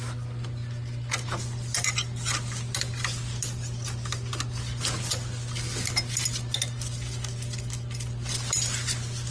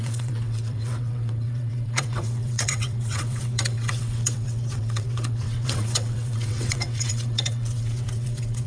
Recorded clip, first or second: first